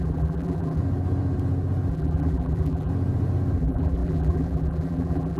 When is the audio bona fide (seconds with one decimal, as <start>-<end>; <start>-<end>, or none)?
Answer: 0.8-1.9; 2.9-3.6